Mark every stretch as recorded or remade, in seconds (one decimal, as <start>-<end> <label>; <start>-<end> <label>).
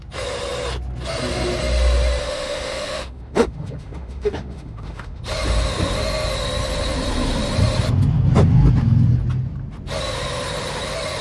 0.0-2.2 recorded; 2.2-5.2 remade; 5.2-11.2 recorded